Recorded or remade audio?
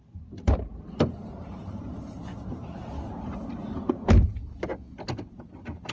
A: recorded